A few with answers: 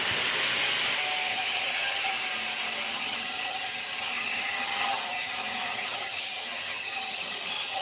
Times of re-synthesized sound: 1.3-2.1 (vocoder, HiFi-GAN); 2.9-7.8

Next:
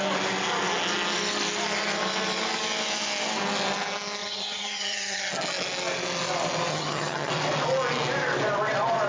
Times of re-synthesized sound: 4.2-5.3 (vocoder, HiFi-GAN); 6.7-7.3